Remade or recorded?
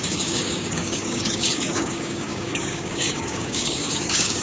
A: remade